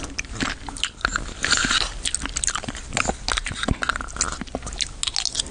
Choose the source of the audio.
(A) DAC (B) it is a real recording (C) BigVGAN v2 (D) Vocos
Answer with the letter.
B